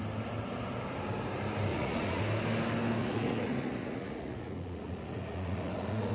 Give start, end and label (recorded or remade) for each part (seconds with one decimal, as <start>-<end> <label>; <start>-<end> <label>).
0.0-1.7 recorded; 1.7-2.2 remade; 2.2-3.0 recorded; 3.0-6.1 remade

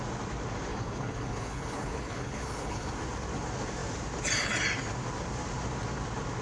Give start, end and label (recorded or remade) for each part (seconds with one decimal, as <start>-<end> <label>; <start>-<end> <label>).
0.0-0.7 recorded; 0.7-2.9 remade; 2.9-6.4 recorded

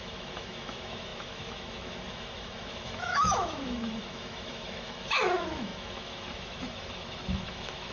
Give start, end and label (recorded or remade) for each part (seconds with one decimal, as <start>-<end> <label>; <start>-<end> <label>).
0.0-7.9 remade

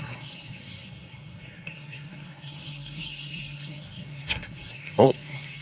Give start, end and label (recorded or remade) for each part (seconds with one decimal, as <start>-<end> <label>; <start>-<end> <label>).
0.0-5.6 remade

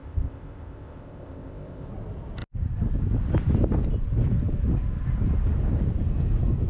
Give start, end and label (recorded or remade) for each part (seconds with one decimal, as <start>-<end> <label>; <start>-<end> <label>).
0.0-1.9 remade; 1.9-6.7 recorded